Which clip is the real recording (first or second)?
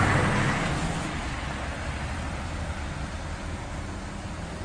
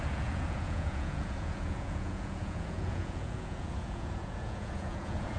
first